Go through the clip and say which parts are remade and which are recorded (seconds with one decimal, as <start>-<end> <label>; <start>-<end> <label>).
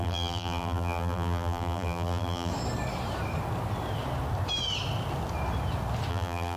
0.0-2.5 remade; 2.5-6.1 recorded; 6.1-6.6 remade